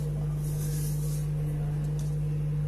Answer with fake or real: real